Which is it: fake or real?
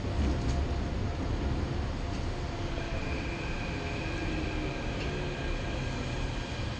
real